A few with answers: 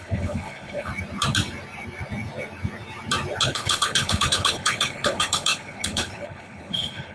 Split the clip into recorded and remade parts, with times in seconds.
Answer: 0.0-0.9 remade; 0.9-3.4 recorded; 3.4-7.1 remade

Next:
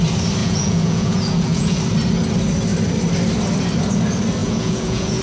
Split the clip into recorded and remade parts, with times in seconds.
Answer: 0.0-0.4 recorded; 0.4-1.8 remade; 1.8-4.4 recorded; 4.4-5.2 remade

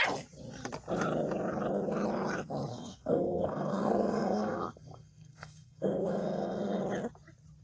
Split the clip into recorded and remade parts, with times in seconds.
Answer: 0.0-2.7 recorded; 2.7-6.8 remade; 6.8-7.6 recorded

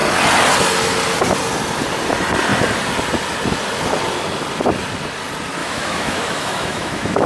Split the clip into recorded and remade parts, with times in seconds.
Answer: 0.0-5.6 recorded; 5.6-7.3 remade

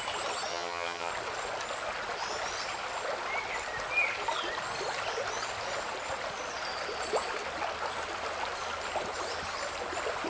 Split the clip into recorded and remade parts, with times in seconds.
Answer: 0.0-0.5 recorded; 0.5-1.1 remade; 1.1-10.3 recorded

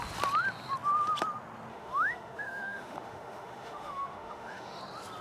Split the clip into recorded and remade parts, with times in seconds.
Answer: 0.0-1.7 recorded; 1.7-4.8 remade; 4.8-5.2 recorded

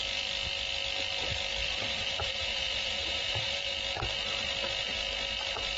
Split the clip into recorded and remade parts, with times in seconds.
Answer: 0.0-1.6 recorded; 1.6-3.7 remade; 3.7-5.8 recorded

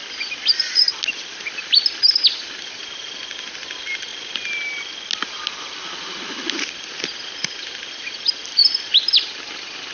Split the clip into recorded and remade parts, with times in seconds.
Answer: 0.0-9.9 recorded